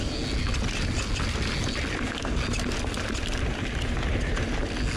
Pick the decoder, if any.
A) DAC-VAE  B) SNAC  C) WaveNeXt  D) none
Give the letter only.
D